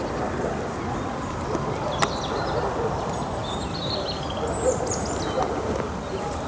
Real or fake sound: real